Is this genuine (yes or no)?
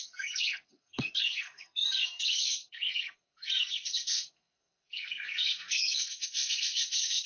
no